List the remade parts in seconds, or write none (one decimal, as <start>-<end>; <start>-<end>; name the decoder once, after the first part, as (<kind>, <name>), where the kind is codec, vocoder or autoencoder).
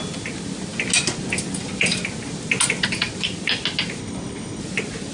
4.0-4.6 (codec, HILCodec)